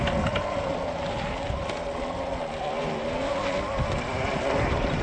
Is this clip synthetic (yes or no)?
no